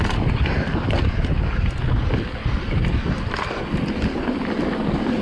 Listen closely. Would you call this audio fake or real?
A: real